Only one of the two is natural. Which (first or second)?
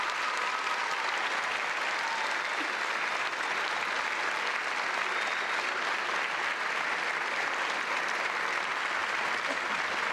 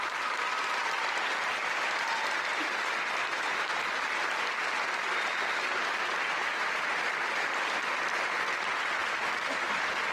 first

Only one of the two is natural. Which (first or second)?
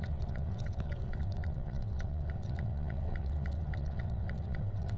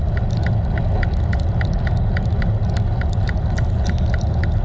second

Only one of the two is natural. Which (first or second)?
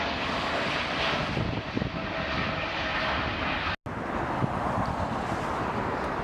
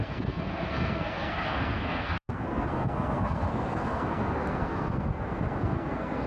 first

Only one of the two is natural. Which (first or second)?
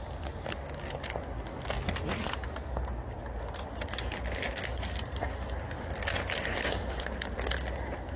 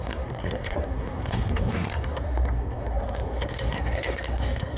first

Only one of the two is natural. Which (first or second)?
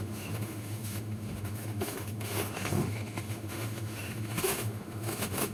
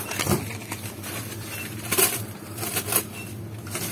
second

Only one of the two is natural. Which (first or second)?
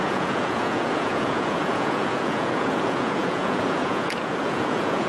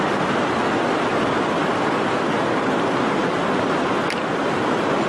second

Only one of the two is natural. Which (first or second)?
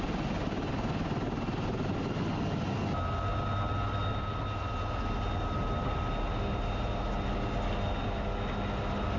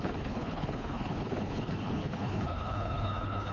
first